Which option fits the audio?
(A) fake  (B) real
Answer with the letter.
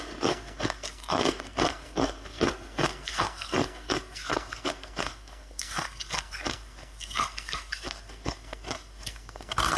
A